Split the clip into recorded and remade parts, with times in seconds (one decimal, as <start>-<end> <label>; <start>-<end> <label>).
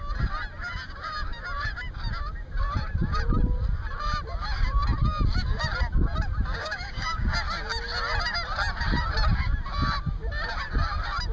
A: 0.0-6.6 recorded; 6.6-7.3 remade; 7.3-11.3 recorded